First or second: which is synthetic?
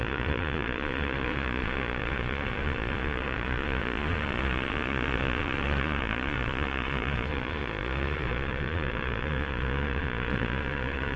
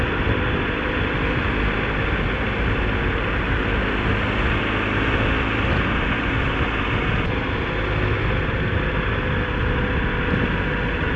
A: first